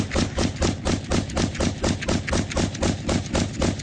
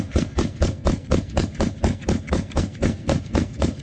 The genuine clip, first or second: first